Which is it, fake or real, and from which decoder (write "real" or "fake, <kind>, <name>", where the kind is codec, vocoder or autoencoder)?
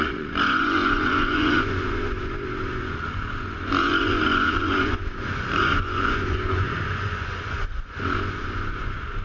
fake, vocoder, Vocos